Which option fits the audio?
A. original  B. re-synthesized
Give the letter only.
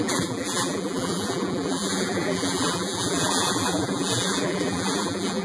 B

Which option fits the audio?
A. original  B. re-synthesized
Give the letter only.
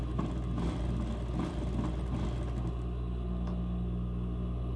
A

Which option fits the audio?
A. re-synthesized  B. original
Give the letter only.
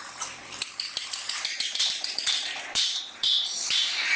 A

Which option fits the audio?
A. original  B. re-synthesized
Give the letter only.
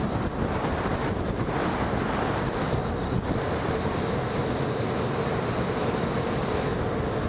A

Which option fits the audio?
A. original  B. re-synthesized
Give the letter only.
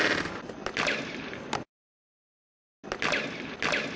A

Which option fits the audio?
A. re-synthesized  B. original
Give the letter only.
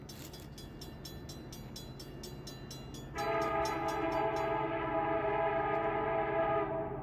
B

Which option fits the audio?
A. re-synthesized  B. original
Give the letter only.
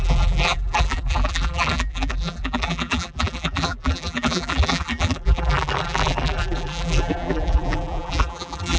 A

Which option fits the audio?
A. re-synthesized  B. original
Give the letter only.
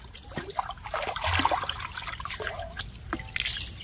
B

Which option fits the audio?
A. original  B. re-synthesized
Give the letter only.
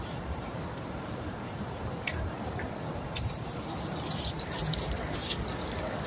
B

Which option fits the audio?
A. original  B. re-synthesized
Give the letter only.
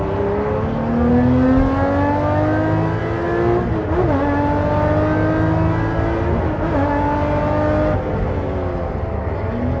A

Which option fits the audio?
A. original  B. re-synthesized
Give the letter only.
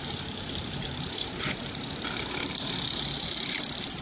B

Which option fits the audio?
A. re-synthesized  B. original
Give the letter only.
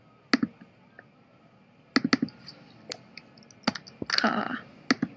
B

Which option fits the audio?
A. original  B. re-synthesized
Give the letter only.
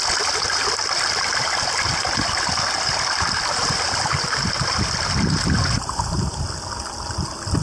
A